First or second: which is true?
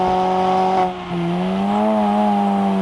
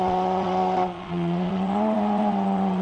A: first